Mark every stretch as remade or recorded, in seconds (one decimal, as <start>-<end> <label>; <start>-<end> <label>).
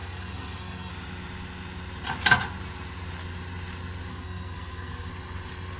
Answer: 0.0-0.9 remade; 0.9-4.1 recorded; 4.1-5.1 remade; 5.1-5.8 recorded